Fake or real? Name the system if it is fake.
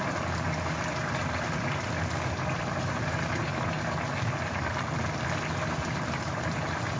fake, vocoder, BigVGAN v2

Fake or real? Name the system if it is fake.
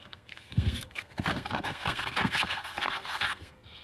fake, codec, SNAC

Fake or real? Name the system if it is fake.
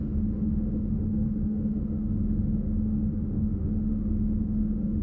fake, autoencoder, DAC-VAE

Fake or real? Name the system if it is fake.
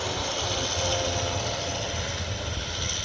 real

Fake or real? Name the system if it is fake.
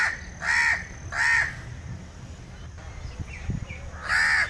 real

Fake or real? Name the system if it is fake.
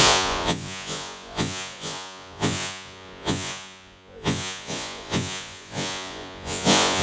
fake, vocoder, Vocos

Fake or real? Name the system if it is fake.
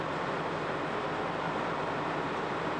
real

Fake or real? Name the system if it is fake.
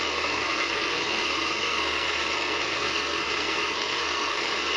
fake, codec, SNAC